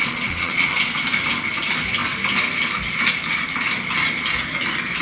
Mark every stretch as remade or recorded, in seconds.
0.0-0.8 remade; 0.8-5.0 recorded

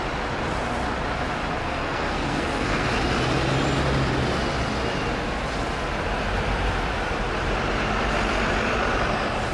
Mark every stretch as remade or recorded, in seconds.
0.0-1.6 recorded; 1.6-2.9 remade; 2.9-9.5 recorded

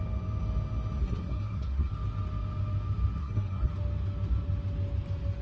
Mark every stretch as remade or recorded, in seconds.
0.0-1.0 recorded; 1.0-1.9 remade; 1.9-3.2 recorded; 3.2-3.7 remade; 3.7-5.4 recorded

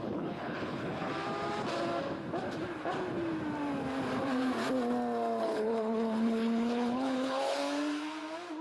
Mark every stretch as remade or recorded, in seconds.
0.0-1.1 remade; 1.1-5.4 recorded; 5.4-7.6 remade; 7.6-8.6 recorded

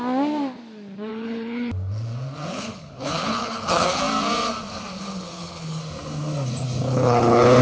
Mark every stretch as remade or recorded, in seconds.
0.0-1.1 recorded; 1.1-1.7 remade; 1.7-2.5 recorded; 2.5-4.0 remade; 4.0-4.9 recorded; 4.9-5.8 remade; 5.8-6.9 recorded; 6.9-7.6 remade

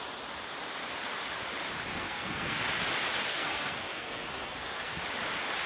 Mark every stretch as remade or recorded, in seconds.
0.0-1.9 recorded; 1.9-2.6 remade; 2.6-3.3 recorded; 3.3-5.0 remade; 5.0-5.7 recorded

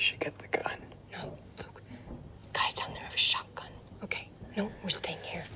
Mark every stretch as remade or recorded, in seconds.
0.0-0.6 recorded; 0.6-1.9 remade; 1.9-2.4 recorded; 2.4-4.6 remade; 4.6-5.6 recorded

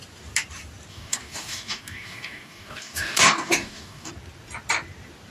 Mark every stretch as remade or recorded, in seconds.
0.0-0.9 recorded; 0.9-4.1 remade; 4.1-5.3 recorded